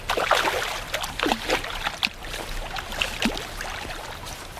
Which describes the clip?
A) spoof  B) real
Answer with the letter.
B